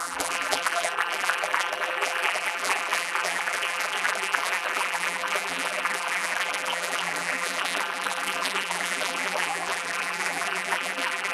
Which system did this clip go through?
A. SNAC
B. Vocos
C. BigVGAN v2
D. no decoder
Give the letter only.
C